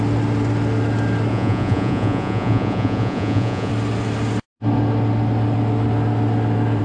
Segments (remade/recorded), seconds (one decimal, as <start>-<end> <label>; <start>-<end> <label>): 0.0-1.3 recorded; 1.3-3.7 remade; 3.7-6.8 recorded